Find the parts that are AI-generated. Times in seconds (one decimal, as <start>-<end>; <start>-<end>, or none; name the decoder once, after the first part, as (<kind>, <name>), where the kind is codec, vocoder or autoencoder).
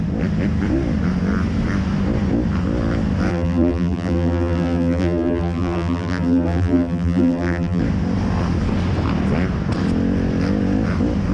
3.3-7.8 (vocoder, BigVGAN v2)